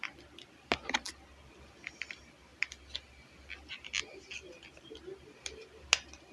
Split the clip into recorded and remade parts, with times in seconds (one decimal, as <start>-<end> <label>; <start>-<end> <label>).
0.0-6.3 recorded